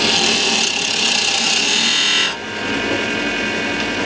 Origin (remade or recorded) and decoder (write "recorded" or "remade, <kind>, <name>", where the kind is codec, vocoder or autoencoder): recorded